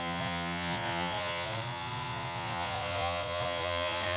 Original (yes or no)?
no